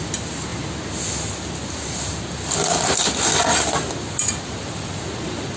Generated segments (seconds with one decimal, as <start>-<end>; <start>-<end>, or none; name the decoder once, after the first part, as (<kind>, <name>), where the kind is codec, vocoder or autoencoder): none